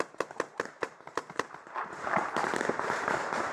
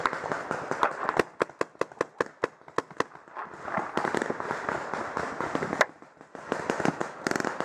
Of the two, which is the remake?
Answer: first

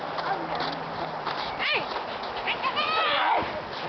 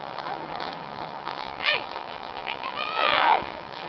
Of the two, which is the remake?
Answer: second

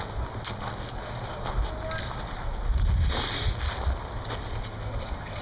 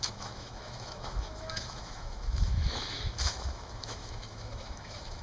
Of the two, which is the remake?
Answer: second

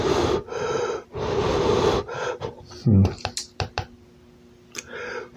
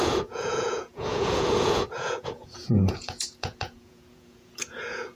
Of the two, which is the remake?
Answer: second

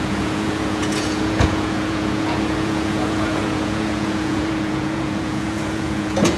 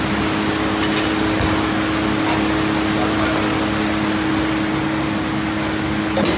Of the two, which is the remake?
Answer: first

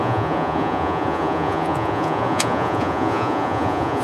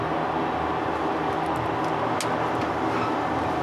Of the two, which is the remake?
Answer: first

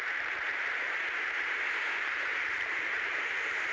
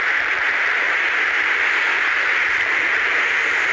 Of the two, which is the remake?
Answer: first